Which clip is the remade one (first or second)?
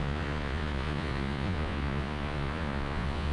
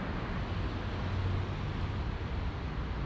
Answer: first